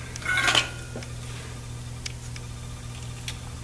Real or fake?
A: real